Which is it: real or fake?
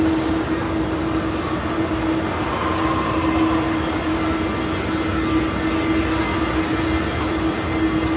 real